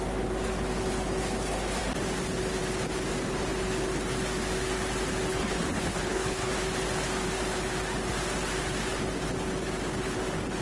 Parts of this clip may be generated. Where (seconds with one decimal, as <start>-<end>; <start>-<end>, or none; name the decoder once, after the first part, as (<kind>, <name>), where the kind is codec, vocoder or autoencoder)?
5.3-6.5 (codec, HILCodec)